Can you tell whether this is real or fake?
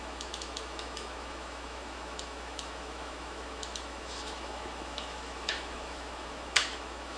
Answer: fake